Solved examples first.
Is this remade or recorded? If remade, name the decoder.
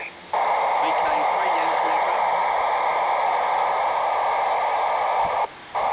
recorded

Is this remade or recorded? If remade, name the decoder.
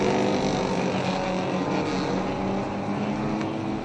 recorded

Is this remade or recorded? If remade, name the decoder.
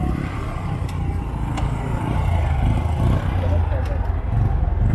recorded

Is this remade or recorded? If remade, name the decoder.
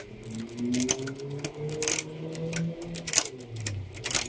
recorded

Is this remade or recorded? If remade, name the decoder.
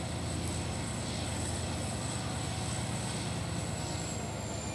recorded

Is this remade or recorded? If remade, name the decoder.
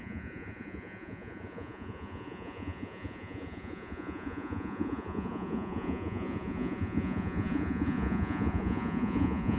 remade, vocoder, Vocos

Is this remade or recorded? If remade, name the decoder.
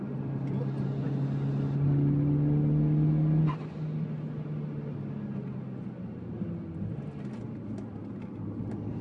recorded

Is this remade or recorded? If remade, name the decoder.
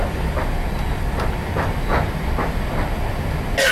recorded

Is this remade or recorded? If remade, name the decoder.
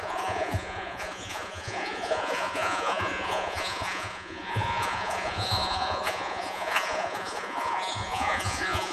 remade, vocoder, Vocos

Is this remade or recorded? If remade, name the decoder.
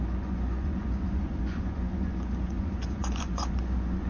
remade, vocoder, Vocos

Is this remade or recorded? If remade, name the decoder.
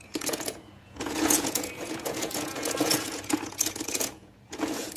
remade, vocoder, Vocos